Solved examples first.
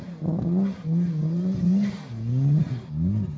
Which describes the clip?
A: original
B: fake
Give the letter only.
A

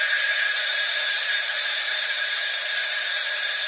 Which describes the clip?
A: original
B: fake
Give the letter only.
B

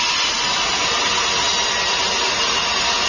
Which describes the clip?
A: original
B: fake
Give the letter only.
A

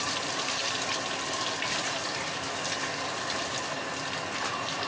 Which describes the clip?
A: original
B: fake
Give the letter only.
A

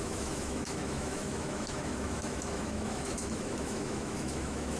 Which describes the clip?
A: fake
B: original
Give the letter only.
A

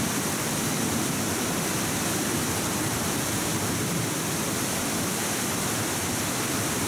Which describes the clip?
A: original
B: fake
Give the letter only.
B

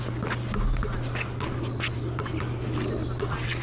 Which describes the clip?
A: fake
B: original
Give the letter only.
B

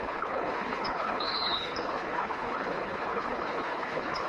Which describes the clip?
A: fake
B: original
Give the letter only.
A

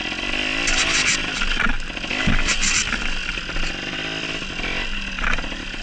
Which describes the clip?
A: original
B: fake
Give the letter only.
A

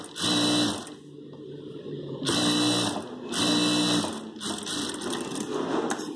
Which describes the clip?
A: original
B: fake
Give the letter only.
A